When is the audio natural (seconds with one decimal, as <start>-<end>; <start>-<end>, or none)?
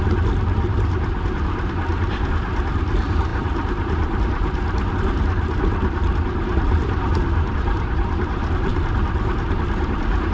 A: none